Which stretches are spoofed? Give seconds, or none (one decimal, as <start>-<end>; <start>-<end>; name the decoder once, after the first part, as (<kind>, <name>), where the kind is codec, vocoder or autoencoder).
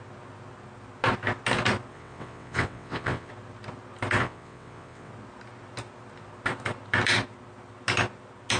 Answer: 1.9-3.3 (vocoder, WaveNeXt); 4.2-5.1